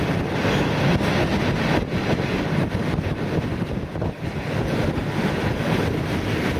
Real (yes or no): yes